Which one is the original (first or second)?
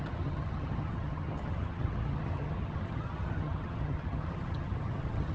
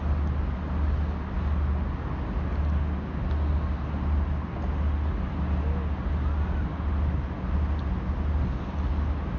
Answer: second